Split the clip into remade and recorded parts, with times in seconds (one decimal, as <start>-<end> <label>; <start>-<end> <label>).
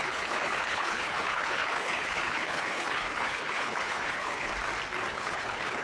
0.0-4.5 remade; 4.5-5.1 recorded; 5.1-5.8 remade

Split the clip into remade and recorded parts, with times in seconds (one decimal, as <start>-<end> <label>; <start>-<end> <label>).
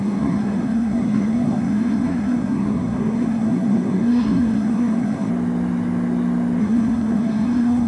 0.0-5.3 remade; 5.3-6.6 recorded; 6.6-7.9 remade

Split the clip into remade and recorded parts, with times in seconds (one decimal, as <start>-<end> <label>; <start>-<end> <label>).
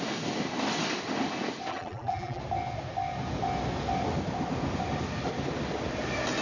0.0-1.7 recorded; 1.7-2.4 remade; 2.4-6.4 recorded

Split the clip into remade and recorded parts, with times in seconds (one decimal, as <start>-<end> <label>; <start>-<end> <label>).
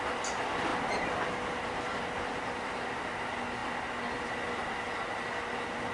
0.0-0.7 recorded; 0.7-2.0 remade; 2.0-5.9 recorded